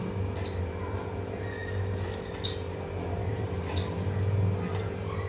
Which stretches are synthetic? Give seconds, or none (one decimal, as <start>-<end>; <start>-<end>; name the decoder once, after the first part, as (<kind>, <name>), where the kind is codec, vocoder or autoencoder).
none

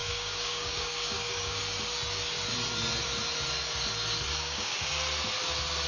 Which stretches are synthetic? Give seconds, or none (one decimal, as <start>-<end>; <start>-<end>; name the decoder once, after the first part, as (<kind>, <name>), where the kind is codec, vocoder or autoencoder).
0.0-1.6 (codec, DAC); 4.3-4.9